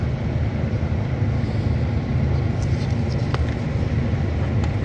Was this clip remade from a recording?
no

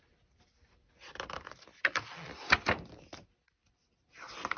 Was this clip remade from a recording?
no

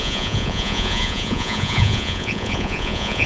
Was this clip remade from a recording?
yes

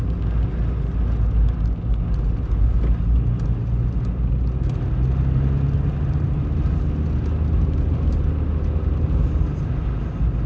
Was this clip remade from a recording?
no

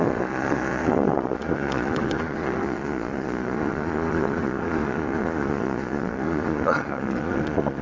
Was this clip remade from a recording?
yes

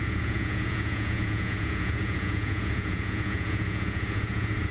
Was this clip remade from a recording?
yes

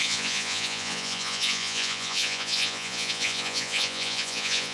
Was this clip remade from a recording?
yes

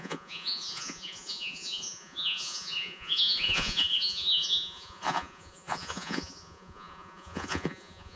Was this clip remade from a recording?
yes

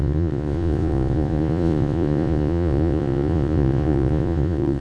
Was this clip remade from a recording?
yes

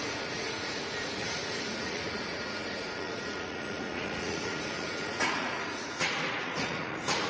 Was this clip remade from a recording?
yes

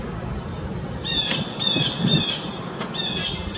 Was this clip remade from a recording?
no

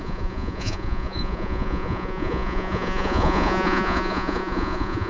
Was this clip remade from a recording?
yes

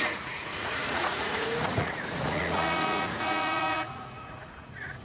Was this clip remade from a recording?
yes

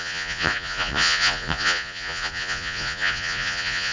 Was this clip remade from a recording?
yes